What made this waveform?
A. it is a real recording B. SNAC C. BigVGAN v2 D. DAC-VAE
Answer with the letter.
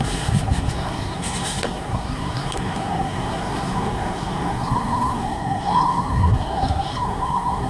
B